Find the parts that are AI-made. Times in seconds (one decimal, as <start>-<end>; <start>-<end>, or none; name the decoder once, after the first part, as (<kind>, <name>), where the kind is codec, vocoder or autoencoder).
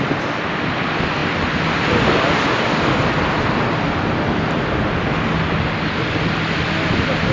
none